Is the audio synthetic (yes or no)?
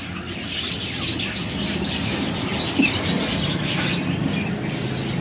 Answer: no